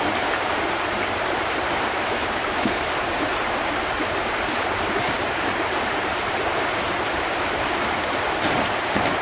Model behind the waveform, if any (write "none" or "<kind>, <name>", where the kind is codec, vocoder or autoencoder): vocoder, BigVGAN v2